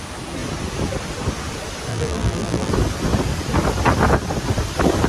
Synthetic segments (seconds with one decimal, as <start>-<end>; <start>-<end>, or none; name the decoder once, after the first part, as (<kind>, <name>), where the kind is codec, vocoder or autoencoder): 1.9-2.7 (vocoder, BigVGAN v2)